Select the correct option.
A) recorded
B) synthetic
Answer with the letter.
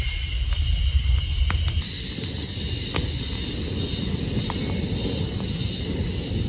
A